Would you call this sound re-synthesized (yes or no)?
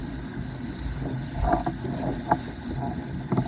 no